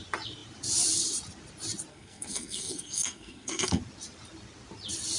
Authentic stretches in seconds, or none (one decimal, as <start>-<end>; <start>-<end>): 0.0-1.9; 3.8-5.2